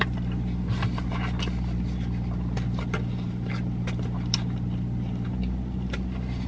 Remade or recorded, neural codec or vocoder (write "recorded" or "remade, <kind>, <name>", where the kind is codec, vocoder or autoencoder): recorded